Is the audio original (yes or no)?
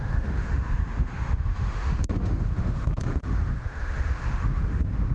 no